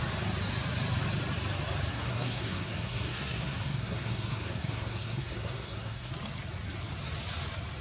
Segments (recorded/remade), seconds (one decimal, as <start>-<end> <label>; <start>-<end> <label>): 0.0-1.9 recorded; 1.9-6.1 remade; 6.1-7.8 recorded

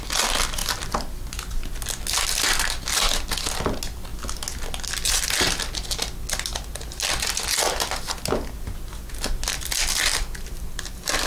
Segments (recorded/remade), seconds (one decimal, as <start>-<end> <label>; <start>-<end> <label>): 0.0-10.1 recorded; 10.1-11.3 remade

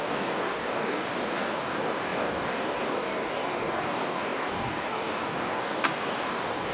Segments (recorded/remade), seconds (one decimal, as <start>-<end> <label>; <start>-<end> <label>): 0.0-6.7 remade